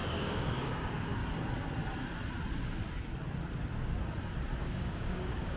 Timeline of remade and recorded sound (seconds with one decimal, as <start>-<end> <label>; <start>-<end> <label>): 0.0-1.2 remade; 1.2-4.6 recorded; 4.6-5.6 remade